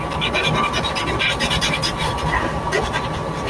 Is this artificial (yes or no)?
no